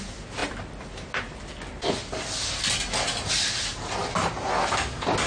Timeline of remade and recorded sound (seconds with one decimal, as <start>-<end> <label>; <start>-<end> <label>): 0.0-5.3 recorded